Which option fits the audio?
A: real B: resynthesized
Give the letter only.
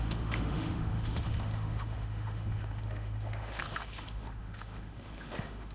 B